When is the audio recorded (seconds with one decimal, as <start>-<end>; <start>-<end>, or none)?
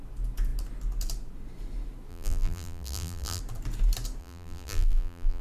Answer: 0.0-2.1; 3.4-4.2